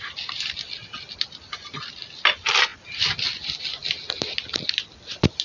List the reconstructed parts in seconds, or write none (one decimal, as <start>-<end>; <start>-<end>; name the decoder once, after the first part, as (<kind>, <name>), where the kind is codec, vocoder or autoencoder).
none